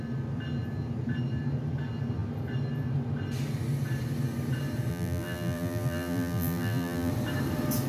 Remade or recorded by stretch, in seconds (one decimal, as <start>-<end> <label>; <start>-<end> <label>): 0.0-4.9 recorded; 4.9-7.1 remade; 7.1-7.9 recorded